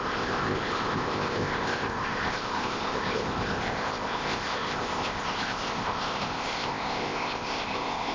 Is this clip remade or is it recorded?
remade